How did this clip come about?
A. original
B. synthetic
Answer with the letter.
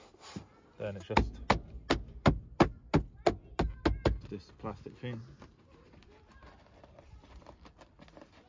A